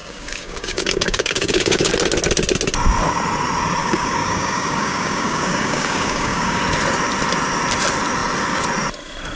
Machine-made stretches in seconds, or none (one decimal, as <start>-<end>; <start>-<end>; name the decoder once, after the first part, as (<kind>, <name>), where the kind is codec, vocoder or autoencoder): 0.0-1.9 (codec, DAC); 3.8-6.6